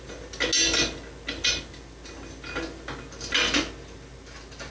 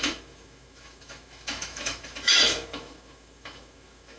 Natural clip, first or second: first